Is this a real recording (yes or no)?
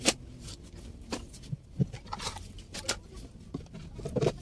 yes